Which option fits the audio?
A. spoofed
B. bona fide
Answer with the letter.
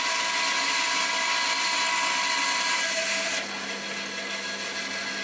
B